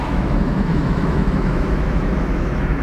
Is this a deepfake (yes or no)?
yes